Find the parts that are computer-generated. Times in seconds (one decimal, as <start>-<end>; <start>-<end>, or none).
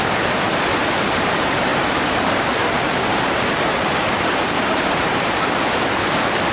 1.7-5.6